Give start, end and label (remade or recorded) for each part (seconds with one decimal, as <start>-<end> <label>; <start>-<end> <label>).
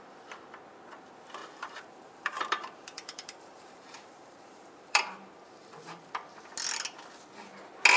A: 0.0-1.4 recorded; 1.4-6.0 remade; 6.0-8.0 recorded